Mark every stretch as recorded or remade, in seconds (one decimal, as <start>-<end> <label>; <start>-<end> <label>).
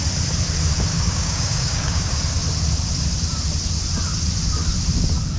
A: 0.0-0.9 recorded; 0.9-2.1 remade; 2.1-5.4 recorded